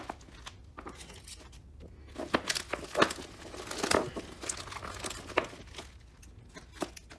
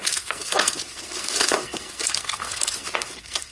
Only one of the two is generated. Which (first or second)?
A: second